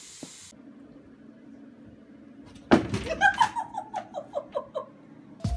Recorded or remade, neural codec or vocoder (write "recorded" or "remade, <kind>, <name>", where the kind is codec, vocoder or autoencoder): recorded